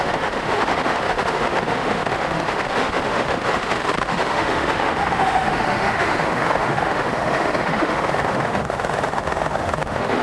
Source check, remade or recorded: remade